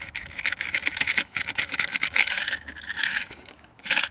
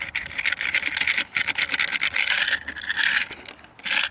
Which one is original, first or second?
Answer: second